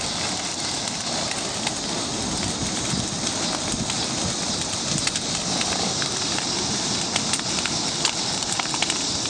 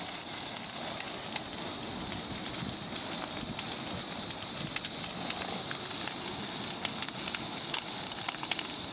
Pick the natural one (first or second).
second